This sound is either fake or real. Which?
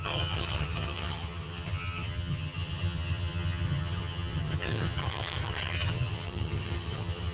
fake